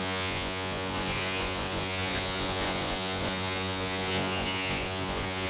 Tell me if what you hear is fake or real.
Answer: fake